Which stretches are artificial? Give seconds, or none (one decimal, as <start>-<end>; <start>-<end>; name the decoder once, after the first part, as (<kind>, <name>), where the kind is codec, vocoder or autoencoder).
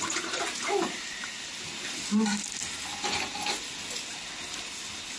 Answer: 0.6-1.4 (vocoder, BigVGAN v2); 2.9-3.5